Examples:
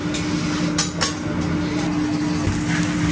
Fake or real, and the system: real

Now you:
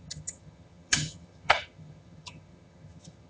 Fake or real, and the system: fake, vocoder, HiFi-GAN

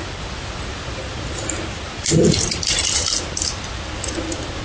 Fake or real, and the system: real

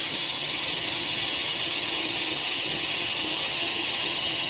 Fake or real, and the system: fake, vocoder, HiFi-GAN